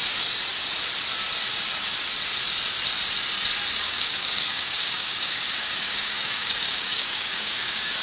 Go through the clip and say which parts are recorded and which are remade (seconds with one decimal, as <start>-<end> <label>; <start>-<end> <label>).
0.0-3.8 recorded; 3.8-8.0 remade